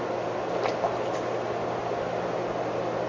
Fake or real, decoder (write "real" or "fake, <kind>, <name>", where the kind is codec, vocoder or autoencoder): real